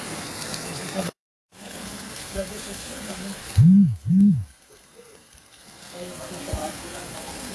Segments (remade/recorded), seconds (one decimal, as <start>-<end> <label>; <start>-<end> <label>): 0.0-7.5 remade